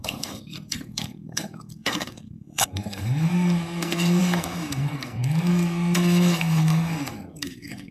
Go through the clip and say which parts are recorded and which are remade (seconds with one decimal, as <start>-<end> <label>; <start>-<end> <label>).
0.0-7.9 remade